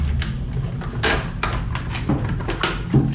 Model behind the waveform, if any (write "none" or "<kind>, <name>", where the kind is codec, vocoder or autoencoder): none